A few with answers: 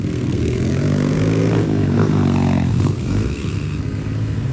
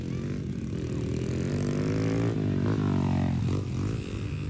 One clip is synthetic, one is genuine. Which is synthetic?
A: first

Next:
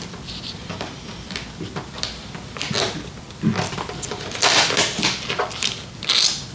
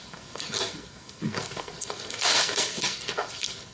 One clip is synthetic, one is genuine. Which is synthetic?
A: second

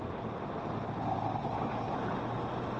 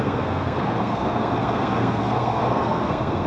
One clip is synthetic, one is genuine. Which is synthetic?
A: second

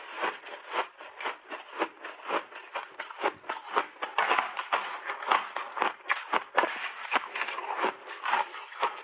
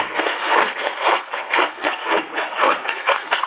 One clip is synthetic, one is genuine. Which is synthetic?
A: second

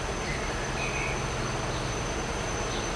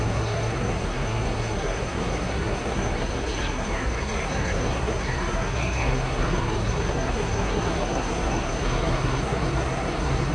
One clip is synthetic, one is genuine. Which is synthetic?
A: second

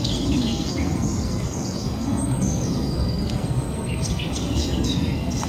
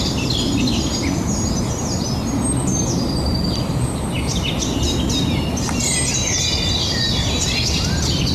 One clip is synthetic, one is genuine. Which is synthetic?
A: first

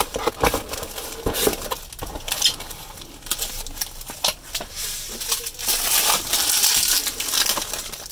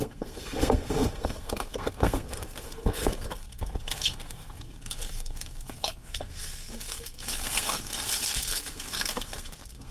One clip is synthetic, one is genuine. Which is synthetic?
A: second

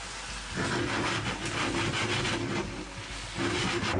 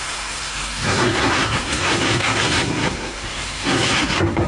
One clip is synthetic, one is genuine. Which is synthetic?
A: second